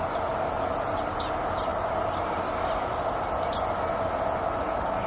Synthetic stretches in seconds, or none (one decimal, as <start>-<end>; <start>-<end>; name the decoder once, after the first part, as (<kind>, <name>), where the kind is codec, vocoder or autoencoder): none